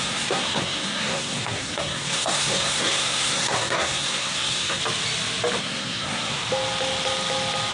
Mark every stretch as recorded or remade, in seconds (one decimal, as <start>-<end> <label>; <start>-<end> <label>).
0.0-4.8 remade; 4.8-5.6 recorded; 5.6-6.4 remade; 6.4-7.7 recorded